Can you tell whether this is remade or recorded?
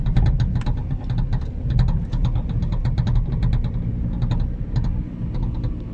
recorded